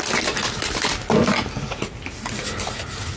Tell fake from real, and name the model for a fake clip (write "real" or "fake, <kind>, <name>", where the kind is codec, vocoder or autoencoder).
real